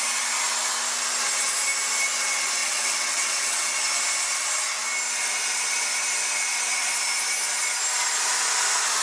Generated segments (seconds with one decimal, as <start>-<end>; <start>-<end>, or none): 2.6-3.7